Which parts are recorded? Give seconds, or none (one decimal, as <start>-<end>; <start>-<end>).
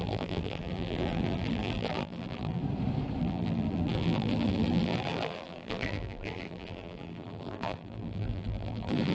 2.6-3.2